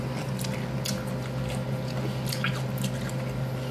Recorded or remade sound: recorded